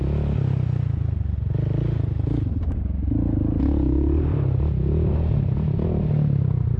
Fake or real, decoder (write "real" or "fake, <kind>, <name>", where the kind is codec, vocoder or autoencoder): real